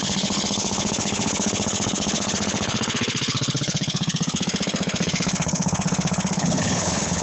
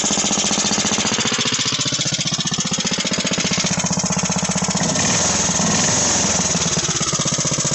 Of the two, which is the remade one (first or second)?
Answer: first